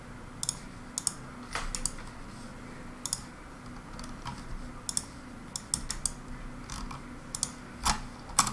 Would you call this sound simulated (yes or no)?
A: no